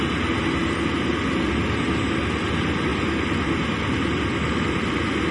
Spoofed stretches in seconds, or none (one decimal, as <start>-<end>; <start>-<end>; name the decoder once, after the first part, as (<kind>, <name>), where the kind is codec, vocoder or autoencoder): none